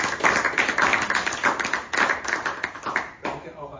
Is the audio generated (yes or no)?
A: no